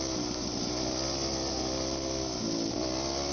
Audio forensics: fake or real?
real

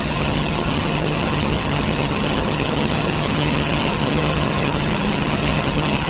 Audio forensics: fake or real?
fake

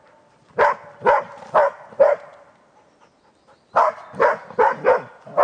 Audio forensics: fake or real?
real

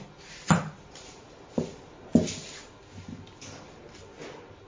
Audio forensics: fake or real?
real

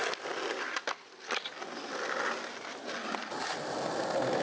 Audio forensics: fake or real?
real